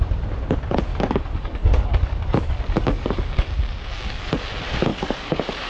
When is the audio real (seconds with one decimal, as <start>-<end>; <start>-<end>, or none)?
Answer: 0.0-0.9; 4.3-4.9